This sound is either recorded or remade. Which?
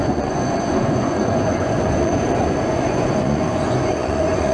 remade